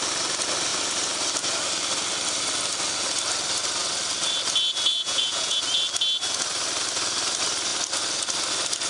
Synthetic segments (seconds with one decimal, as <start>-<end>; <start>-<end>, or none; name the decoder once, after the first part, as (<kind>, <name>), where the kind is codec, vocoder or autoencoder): 4.9-5.6 (vocoder, Vocos)